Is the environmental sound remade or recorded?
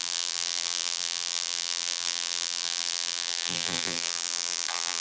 remade